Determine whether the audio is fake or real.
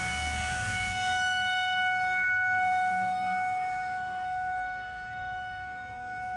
fake